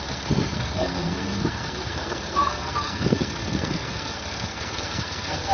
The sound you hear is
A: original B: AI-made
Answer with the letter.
B